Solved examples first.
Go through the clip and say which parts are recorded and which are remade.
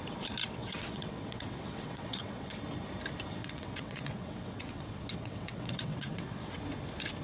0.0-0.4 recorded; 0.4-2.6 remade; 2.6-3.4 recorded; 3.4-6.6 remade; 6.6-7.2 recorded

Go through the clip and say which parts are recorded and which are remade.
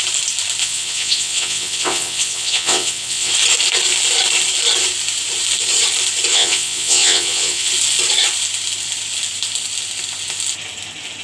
0.0-0.6 recorded; 0.6-3.3 remade; 3.3-6.3 recorded; 6.3-7.7 remade; 7.7-11.2 recorded